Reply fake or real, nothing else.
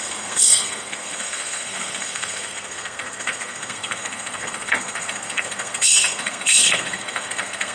fake